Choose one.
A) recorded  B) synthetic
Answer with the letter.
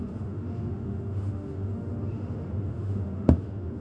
B